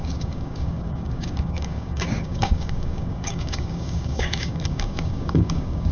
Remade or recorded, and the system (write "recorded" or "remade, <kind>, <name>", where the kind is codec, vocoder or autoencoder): remade, codec, DAC